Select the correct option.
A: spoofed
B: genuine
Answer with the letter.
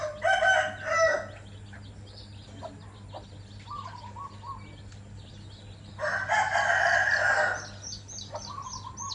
B